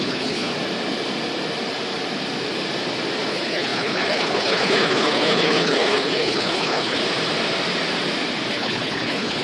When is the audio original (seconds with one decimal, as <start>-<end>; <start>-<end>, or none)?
0.5-3.3; 7.0-8.5